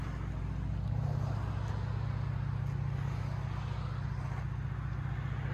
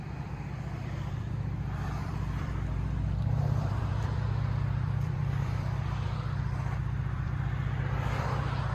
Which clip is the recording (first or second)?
first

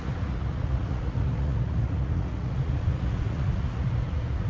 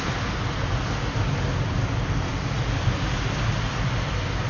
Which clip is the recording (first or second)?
second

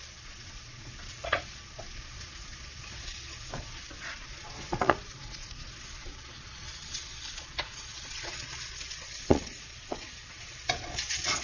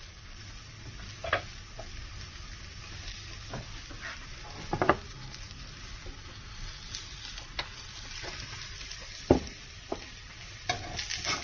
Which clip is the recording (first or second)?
second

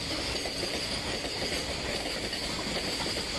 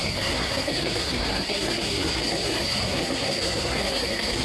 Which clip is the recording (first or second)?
first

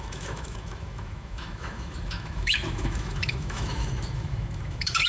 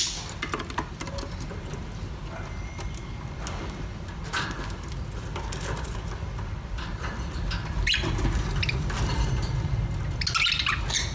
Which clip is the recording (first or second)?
second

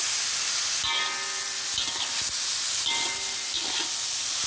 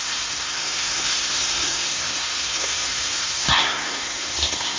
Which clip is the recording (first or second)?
first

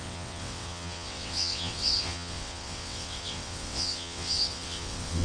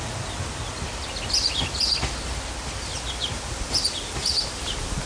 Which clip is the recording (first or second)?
second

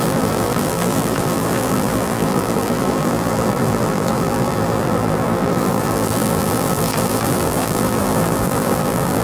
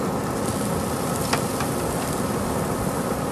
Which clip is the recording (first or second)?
second